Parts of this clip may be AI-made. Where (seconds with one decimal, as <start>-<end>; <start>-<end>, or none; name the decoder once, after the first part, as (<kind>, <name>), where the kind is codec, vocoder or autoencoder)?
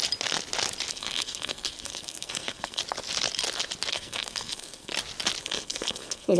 0.9-2.8 (codec, SNAC); 3.9-4.9; 5.4-6.4